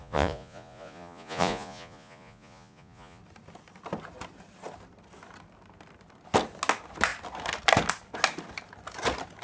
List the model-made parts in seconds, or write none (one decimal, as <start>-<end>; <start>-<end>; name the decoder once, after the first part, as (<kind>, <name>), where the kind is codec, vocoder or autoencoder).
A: 0.0-3.2 (vocoder, Vocos)